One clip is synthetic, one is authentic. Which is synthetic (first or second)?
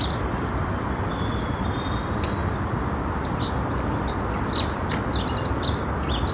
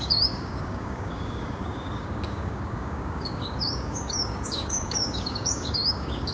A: second